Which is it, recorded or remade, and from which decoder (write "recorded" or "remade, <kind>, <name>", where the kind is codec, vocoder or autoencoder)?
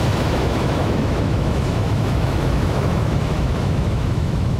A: remade, autoencoder, DAC-VAE